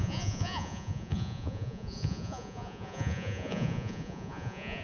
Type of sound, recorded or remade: remade